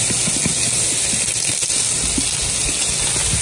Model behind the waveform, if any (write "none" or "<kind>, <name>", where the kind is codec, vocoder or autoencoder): none